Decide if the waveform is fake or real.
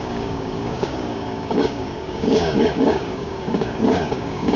fake